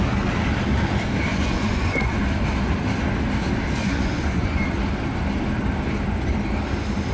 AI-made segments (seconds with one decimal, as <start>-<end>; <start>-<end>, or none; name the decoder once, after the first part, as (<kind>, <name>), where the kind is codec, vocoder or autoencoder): 1.3-2.1 (vocoder, Vocos); 3.8-4.6